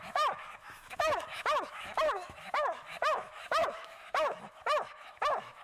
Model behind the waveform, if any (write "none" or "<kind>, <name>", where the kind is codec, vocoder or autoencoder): autoencoder, DAC-VAE